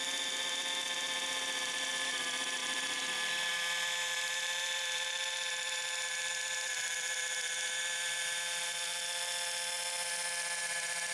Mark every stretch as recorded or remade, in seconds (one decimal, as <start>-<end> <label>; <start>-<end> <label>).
0.0-8.9 remade; 8.9-10.6 recorded; 10.6-11.1 remade